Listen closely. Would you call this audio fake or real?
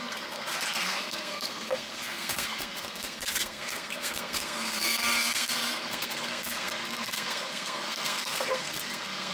fake